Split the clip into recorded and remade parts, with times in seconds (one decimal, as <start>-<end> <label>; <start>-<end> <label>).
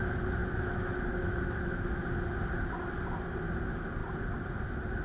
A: 0.0-0.4 recorded; 0.4-1.9 remade; 1.9-5.0 recorded